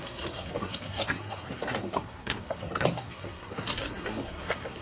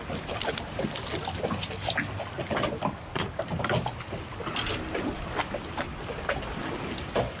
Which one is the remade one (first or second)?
first